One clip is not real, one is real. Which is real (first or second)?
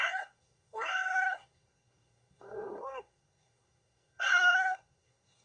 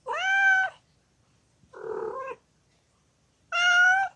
second